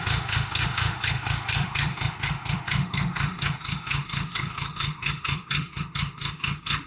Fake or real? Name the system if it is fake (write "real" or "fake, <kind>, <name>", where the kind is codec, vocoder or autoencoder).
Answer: fake, autoencoder, DAC-VAE